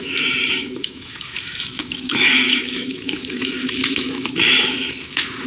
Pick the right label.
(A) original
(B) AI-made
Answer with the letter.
B